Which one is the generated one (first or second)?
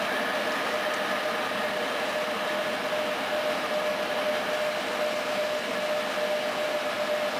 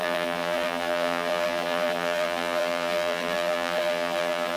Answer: second